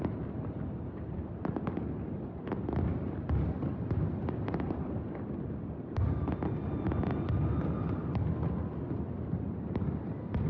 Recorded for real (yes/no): yes